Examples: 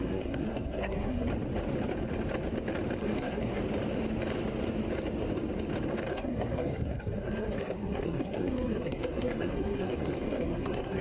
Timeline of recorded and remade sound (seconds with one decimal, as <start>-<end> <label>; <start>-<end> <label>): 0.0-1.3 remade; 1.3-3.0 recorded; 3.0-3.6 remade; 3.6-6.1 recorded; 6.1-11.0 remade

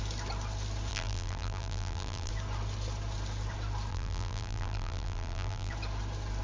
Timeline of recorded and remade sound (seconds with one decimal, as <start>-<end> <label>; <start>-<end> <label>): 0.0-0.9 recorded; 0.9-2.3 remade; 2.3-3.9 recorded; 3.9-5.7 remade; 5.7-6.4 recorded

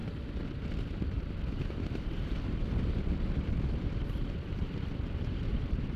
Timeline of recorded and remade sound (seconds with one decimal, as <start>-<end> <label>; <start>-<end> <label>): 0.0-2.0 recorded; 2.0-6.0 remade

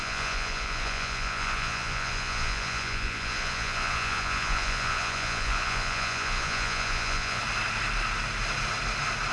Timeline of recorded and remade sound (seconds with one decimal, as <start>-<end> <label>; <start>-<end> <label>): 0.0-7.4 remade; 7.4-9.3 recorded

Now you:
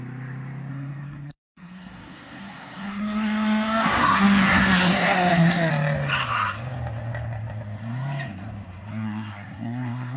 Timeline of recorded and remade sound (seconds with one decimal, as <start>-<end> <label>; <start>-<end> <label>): 0.0-0.7 recorded; 0.7-5.7 remade; 5.7-8.9 recorded; 8.9-10.2 remade

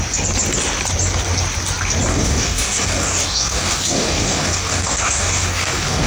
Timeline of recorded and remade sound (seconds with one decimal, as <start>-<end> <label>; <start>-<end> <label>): 0.0-2.1 recorded; 2.1-6.1 remade

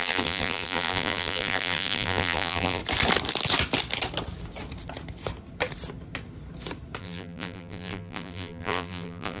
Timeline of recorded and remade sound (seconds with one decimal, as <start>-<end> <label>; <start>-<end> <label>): 0.0-2.8 remade; 2.8-7.0 recorded; 7.0-9.4 remade